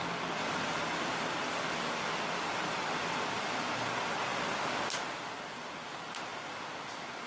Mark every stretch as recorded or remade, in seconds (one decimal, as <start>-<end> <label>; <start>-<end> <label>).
0.0-7.3 recorded